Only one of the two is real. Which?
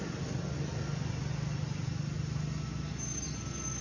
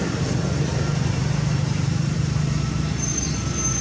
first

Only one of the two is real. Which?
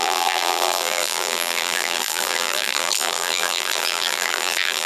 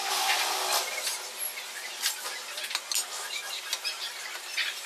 second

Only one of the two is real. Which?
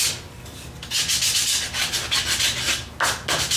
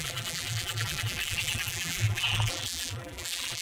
first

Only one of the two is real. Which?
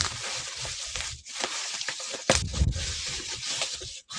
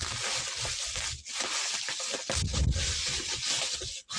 second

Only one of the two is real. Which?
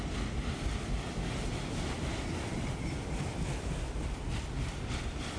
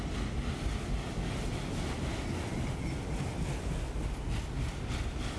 second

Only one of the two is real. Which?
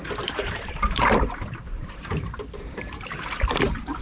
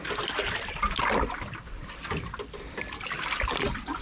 second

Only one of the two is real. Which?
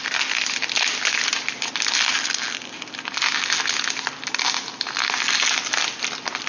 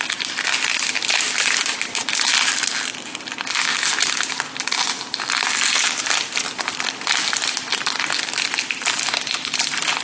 first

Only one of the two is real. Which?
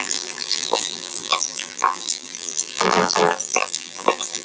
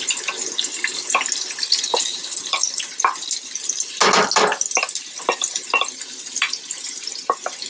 second